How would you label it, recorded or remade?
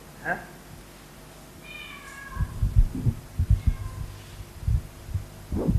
recorded